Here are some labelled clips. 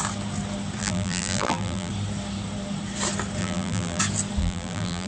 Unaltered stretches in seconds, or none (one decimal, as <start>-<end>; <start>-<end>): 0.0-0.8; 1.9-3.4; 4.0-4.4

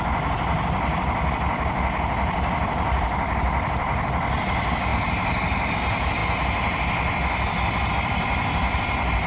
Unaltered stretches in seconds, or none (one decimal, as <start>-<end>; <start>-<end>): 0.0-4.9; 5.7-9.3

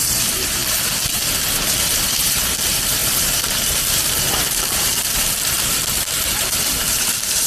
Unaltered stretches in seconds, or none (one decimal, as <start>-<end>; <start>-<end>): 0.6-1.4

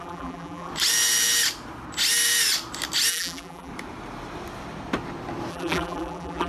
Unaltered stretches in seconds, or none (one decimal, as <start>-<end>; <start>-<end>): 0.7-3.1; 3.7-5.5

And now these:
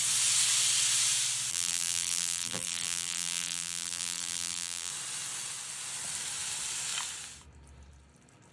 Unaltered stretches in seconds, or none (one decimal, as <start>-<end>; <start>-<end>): 0.0-1.5; 4.9-8.5